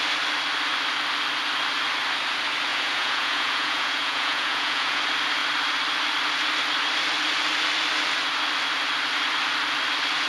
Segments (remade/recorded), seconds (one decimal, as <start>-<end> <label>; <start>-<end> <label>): 0.0-2.7 recorded; 2.7-5.0 remade; 5.0-10.3 recorded